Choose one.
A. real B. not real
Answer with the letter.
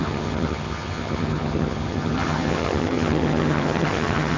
B